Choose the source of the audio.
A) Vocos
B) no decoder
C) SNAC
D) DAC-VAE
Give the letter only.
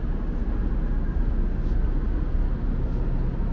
B